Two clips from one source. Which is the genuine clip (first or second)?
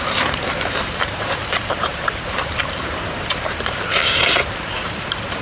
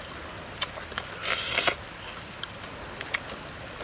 second